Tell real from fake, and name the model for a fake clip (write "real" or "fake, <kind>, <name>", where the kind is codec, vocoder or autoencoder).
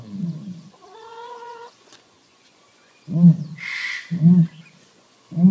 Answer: fake, vocoder, Vocos